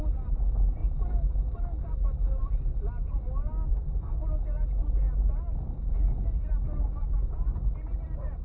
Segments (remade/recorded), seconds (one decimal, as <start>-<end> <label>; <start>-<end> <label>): 0.0-3.7 recorded; 3.7-4.2 remade; 4.2-8.4 recorded